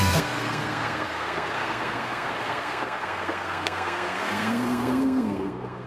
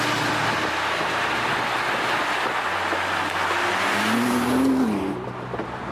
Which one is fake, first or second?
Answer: first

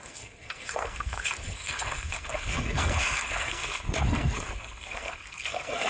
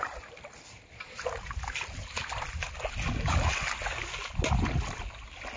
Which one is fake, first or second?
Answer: first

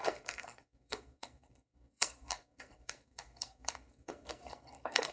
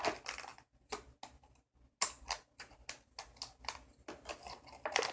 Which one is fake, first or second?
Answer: first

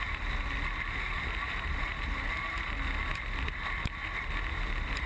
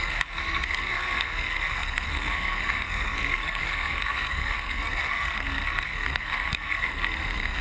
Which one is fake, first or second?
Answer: second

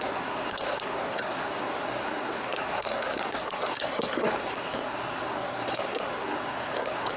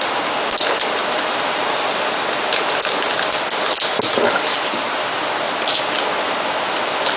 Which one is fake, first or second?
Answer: first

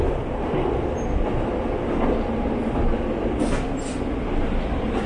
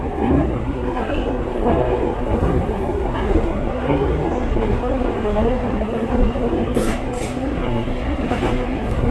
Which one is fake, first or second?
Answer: second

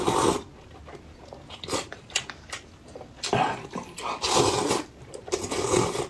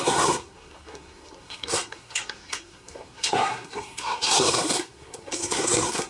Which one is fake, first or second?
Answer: second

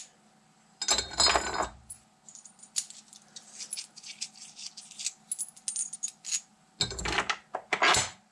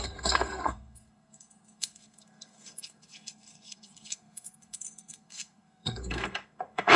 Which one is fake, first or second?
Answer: second